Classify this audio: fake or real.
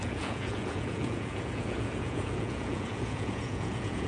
fake